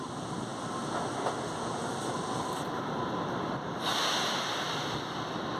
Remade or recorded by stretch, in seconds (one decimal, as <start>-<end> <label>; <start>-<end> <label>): 0.0-5.6 recorded